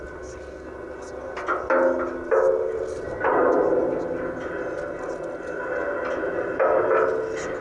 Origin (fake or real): real